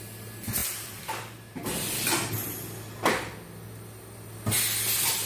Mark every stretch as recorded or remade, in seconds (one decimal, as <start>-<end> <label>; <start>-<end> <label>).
0.0-0.6 recorded; 0.6-1.6 remade; 1.6-5.2 recorded